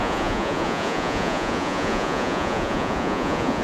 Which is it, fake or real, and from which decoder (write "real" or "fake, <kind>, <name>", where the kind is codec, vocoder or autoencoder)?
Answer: fake, vocoder, Vocos